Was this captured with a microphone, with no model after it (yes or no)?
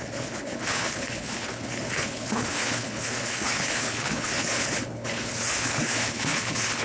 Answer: no